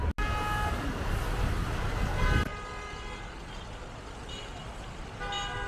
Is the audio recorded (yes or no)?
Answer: yes